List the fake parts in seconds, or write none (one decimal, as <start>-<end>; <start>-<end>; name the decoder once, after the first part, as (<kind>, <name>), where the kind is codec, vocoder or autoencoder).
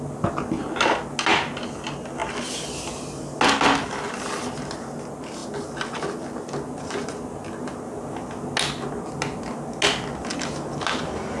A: none